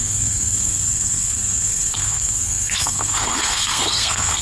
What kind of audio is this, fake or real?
fake